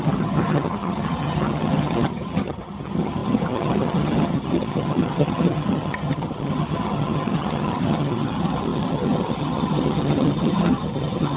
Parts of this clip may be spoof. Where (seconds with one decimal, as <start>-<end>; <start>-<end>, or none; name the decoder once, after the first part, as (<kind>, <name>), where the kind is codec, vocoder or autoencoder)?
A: 0.0-11.4 (vocoder, HiFi-GAN)